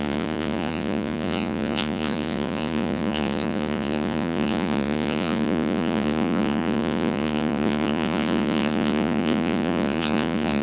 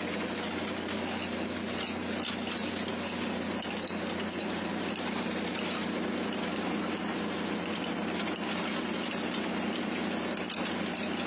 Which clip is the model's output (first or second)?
first